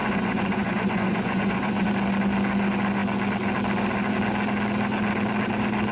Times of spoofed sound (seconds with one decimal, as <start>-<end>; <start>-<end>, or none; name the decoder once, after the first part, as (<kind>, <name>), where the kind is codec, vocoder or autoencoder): 0.0-1.9 (vocoder, Vocos)